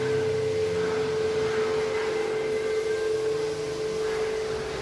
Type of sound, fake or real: real